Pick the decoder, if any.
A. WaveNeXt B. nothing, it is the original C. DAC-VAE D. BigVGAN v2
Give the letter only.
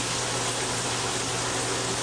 B